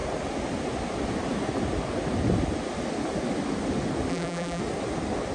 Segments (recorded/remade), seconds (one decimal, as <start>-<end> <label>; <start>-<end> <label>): 0.0-4.1 recorded; 4.1-4.6 remade; 4.6-5.3 recorded